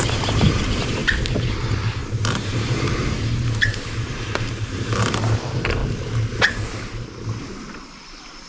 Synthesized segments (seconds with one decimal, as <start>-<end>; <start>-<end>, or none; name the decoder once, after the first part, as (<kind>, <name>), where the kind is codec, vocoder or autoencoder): 0.0-1.0 (vocoder, BigVGAN v2); 1.5-5.8; 8.0-8.5